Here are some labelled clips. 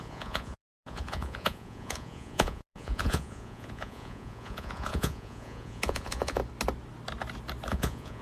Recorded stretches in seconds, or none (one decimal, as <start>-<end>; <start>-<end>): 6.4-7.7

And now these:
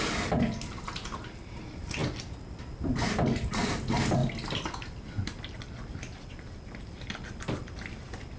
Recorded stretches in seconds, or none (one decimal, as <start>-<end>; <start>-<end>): 0.0-8.4

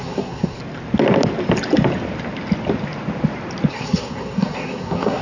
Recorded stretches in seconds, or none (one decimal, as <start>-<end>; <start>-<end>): 0.6-3.7

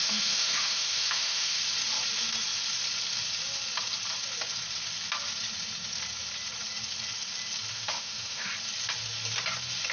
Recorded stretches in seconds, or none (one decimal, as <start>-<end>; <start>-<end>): 1.6-7.7; 8.5-9.9